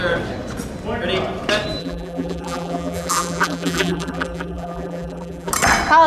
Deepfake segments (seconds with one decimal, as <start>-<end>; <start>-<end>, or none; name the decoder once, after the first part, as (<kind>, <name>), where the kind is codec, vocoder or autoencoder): 1.8-5.5 (vocoder, BigVGAN v2)